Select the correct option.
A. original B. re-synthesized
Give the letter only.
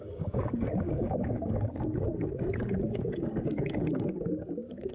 B